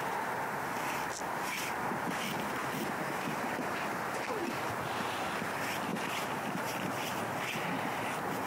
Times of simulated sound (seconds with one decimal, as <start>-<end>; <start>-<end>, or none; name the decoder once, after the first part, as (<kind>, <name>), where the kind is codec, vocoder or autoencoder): 2.6-3.9 (vocoder, BigVGAN v2); 4.4-4.9; 5.9-7.4